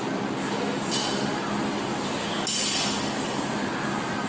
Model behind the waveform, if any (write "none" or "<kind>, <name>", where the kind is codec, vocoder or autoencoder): none